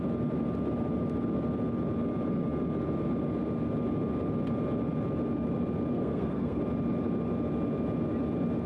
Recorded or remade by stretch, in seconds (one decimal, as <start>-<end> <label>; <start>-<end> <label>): 0.0-5.9 recorded; 5.9-6.6 remade; 6.6-8.7 recorded